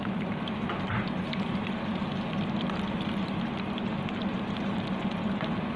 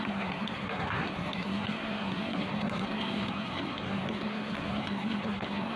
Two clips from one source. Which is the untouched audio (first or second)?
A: first